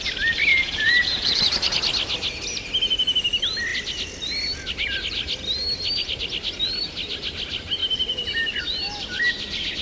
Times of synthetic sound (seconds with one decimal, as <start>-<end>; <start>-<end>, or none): 0.5-1.4